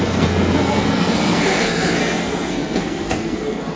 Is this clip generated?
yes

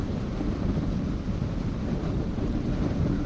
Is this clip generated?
no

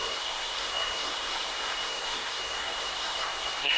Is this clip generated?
yes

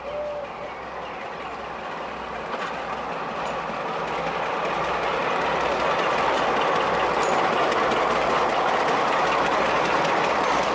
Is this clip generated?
no